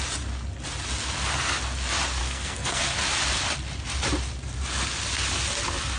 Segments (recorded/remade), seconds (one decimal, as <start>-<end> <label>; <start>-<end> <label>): 0.0-2.2 recorded; 2.2-2.8 remade; 2.8-6.0 recorded